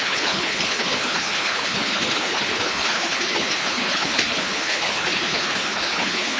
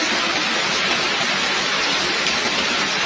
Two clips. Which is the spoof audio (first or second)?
first